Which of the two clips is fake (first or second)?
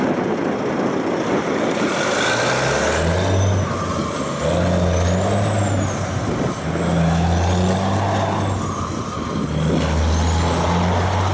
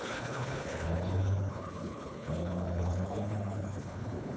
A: second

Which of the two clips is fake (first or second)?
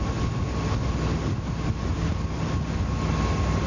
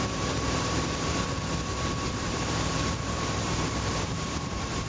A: second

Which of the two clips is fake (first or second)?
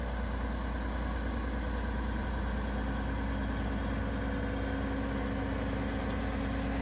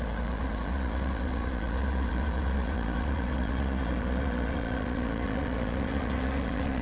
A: second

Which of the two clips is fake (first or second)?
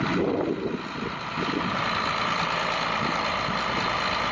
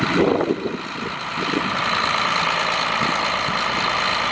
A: second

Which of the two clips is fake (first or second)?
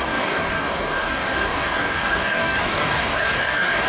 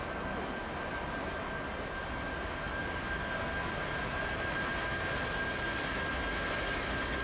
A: first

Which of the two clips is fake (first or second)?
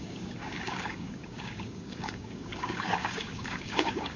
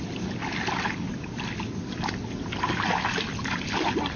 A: first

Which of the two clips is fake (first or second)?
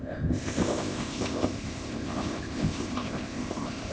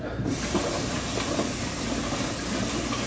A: first